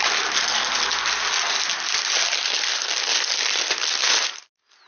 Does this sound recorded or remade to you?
recorded